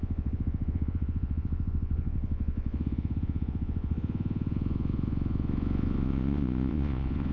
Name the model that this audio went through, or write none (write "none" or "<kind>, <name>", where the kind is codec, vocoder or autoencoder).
vocoder, Vocos